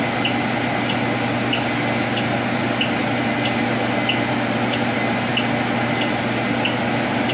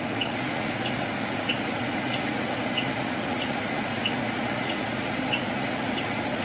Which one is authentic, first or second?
first